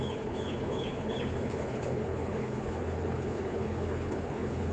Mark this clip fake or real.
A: fake